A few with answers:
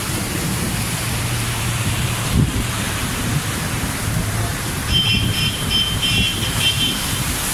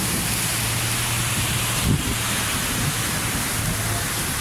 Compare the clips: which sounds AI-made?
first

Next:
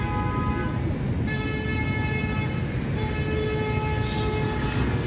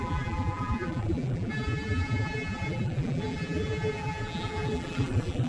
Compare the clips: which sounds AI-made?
second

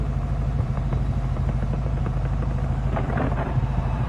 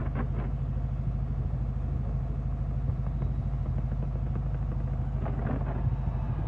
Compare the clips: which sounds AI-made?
first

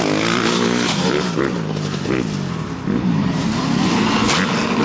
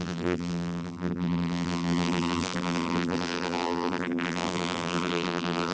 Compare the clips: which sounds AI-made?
second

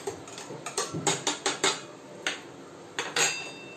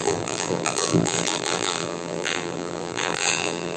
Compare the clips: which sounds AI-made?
second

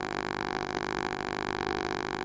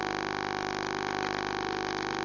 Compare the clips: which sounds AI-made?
first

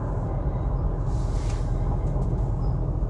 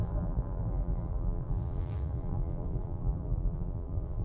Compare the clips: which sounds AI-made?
second